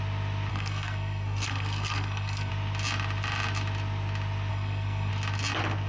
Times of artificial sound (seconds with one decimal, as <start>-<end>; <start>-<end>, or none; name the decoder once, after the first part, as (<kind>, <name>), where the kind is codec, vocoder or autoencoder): 0.5-2.5 (codec, SNAC); 4.5-5.1